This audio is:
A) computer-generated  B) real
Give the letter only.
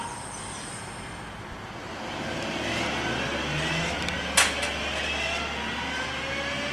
B